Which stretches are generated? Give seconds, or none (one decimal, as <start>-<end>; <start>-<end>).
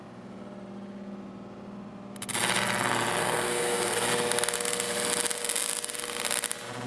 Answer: 3.2-4.1